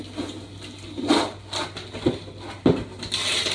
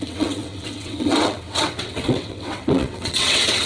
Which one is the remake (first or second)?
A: second